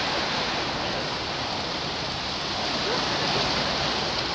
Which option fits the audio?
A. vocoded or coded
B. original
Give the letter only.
B